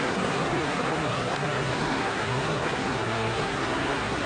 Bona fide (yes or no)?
no